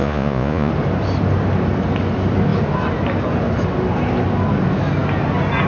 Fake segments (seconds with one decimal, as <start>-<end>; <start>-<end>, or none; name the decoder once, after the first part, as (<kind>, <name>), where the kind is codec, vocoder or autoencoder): 0.0-0.7 (vocoder, Vocos)